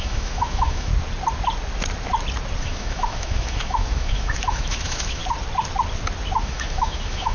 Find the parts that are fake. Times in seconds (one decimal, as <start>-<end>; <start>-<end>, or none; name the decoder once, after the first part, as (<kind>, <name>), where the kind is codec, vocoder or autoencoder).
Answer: 0.0-0.9 (autoencoder, DAC-VAE); 2.6-5.2; 6.4-7.3